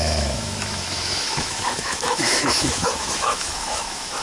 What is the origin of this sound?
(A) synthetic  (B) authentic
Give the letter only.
A